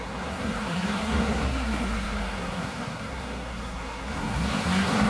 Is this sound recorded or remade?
remade